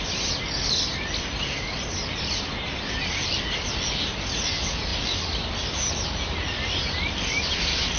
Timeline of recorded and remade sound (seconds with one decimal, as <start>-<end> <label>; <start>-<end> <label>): 0.0-8.0 recorded